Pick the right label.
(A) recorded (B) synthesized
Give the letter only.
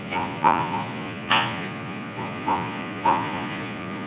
B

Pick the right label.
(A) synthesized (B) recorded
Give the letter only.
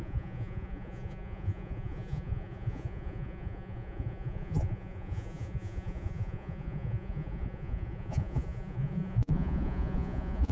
A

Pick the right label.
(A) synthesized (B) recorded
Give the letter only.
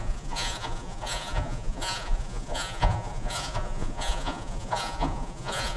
A